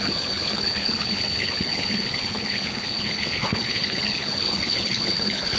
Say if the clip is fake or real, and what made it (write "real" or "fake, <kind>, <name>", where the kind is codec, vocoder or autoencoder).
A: fake, codec, HILCodec